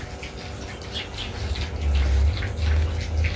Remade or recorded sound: recorded